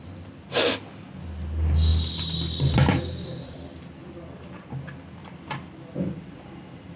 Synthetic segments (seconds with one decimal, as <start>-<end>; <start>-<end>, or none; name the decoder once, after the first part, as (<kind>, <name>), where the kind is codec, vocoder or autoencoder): 1.9-4.7 (vocoder, BigVGAN v2); 5.2-7.0